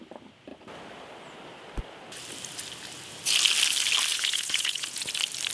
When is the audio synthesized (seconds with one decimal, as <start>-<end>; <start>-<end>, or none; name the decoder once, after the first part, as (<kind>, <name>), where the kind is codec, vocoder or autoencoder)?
4.1-5.1 (vocoder, Vocos)